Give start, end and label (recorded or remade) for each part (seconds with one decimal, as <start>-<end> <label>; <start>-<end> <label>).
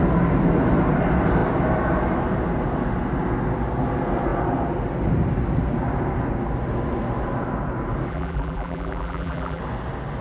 0.0-8.1 recorded; 8.1-9.6 remade; 9.6-10.2 recorded